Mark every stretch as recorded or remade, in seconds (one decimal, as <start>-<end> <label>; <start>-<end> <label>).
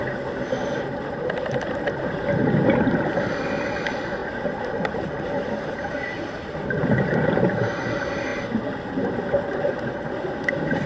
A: 0.0-10.9 recorded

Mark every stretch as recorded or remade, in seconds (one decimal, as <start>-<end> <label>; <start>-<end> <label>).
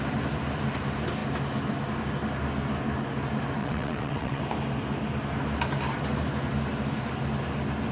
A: 0.0-3.6 recorded; 3.6-4.4 remade; 4.4-7.9 recorded